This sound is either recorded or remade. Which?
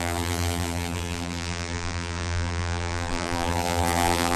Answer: remade